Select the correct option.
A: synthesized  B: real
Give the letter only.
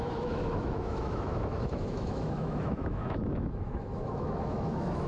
A